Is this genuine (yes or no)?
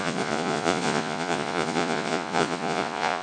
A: no